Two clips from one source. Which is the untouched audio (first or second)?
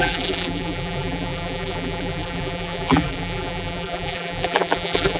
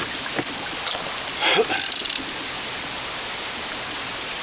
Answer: second